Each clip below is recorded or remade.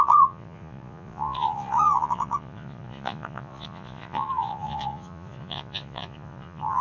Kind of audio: remade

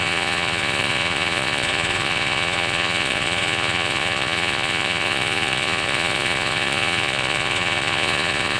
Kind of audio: remade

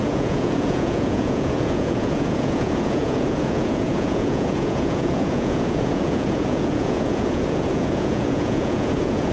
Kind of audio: remade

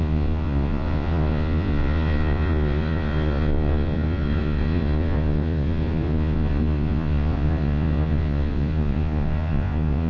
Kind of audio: remade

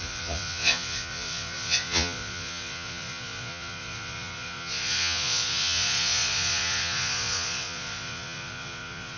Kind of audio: remade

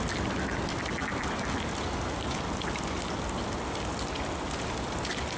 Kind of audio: recorded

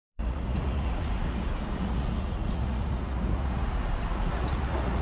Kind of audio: remade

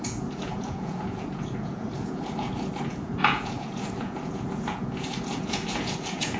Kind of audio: remade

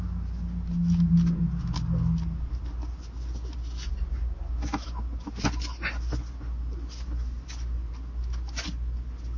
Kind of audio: recorded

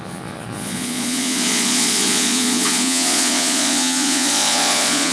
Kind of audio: remade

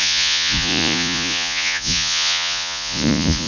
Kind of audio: remade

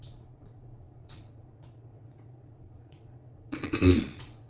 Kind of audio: remade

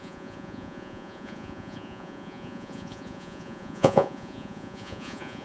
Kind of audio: remade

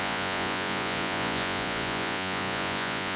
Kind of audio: remade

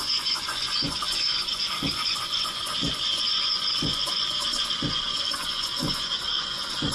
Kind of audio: remade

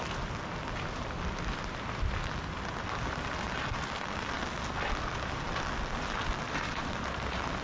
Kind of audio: recorded